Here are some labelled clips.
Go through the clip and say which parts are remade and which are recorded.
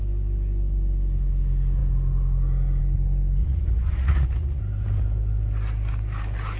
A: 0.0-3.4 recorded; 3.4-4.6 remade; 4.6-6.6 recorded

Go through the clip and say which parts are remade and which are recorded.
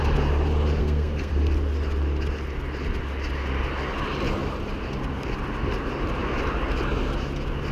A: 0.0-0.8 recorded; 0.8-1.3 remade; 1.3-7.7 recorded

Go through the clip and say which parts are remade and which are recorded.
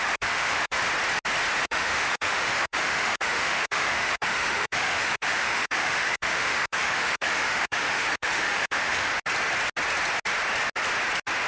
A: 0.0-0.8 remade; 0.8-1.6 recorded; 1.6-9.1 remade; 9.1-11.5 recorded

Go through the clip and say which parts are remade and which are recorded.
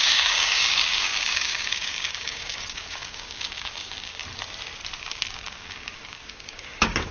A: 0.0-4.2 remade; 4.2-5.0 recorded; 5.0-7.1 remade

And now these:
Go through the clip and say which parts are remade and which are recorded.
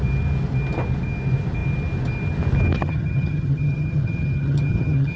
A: 0.0-2.8 recorded; 2.8-5.2 remade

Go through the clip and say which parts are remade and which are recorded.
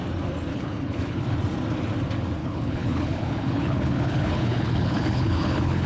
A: 0.0-0.5 recorded; 0.5-1.2 remade; 1.2-2.4 recorded; 2.4-5.9 remade